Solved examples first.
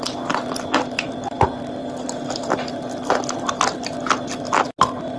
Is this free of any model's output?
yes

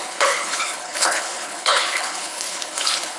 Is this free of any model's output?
no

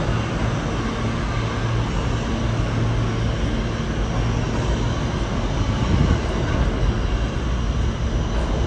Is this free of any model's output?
yes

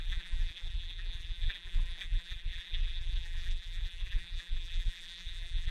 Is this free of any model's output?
no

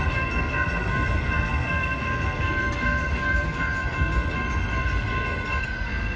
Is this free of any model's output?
no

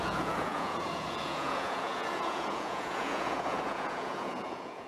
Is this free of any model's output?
no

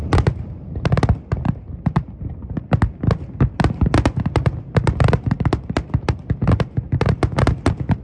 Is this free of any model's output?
yes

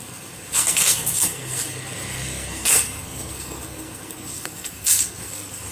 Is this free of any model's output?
no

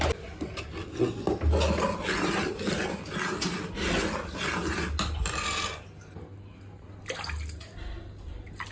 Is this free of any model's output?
yes